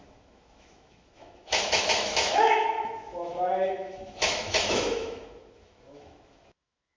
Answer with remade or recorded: remade